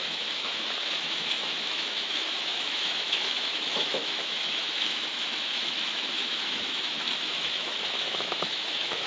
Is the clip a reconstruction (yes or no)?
yes